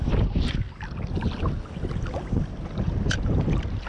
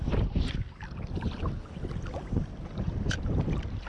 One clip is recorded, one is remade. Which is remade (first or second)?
second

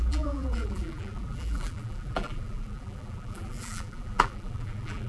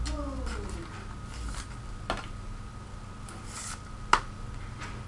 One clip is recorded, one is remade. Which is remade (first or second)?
first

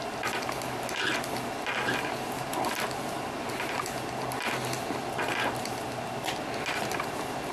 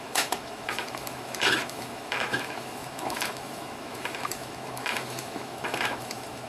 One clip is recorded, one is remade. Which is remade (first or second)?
second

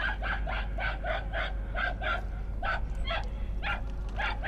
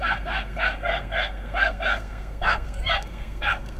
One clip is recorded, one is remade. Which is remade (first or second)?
second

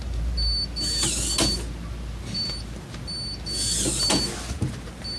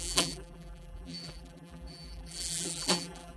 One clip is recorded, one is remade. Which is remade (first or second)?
second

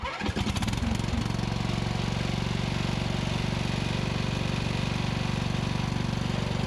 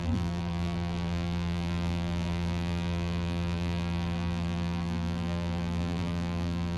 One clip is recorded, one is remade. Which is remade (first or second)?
second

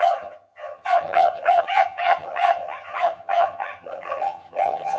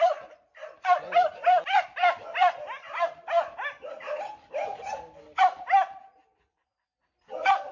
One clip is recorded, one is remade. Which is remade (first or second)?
first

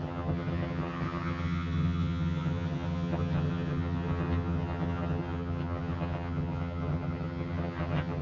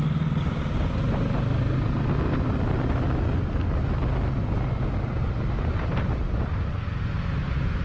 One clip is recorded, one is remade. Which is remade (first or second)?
first